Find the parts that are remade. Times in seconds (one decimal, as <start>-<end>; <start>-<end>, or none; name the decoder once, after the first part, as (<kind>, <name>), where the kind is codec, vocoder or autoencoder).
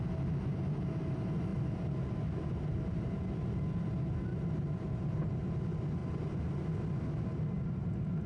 1.5-3.2 (vocoder, BigVGAN v2); 4.3-5.2; 6.0-6.6